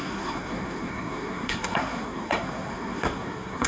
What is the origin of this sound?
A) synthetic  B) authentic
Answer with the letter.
A